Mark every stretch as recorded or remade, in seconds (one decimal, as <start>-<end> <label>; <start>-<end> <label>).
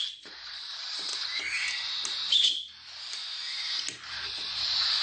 0.0-1.1 remade; 1.1-4.1 recorded; 4.1-5.0 remade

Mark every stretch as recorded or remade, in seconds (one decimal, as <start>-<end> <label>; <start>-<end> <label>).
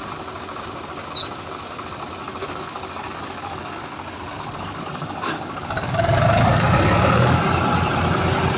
0.0-2.2 recorded; 2.2-7.4 remade; 7.4-8.6 recorded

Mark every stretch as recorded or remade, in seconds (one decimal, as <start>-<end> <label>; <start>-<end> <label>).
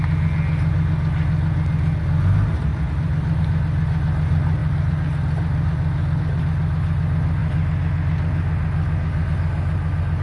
0.0-2.7 recorded; 2.7-3.4 remade; 3.4-4.6 recorded; 4.6-6.4 remade; 6.4-10.2 recorded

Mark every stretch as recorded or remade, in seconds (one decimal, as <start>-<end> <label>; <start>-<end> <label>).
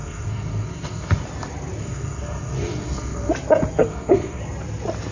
0.0-1.2 remade; 1.2-1.8 recorded; 1.8-3.3 remade; 3.3-3.8 recorded; 3.8-4.4 remade; 4.4-5.1 recorded